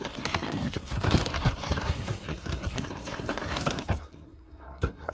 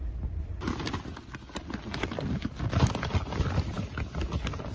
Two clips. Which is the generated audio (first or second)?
first